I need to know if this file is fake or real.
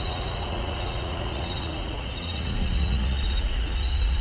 fake